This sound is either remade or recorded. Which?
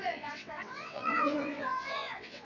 remade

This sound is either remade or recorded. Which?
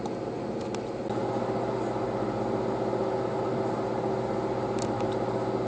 recorded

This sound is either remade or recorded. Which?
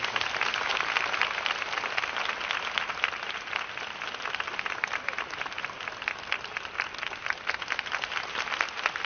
recorded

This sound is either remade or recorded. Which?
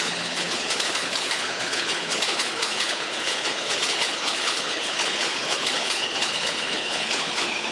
remade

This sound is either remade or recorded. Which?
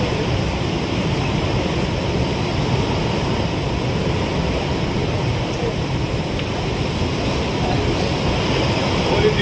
remade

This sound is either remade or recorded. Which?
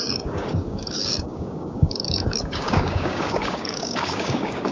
remade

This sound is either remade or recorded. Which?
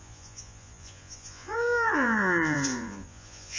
remade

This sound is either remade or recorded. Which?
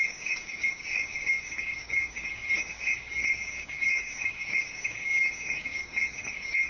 remade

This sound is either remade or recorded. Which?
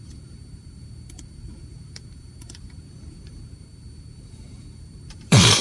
remade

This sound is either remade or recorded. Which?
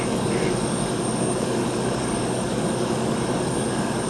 remade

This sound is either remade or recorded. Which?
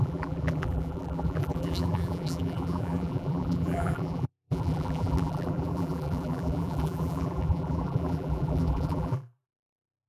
remade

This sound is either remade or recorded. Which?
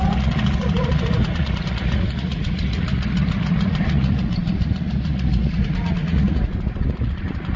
remade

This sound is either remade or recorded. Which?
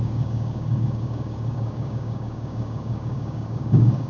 remade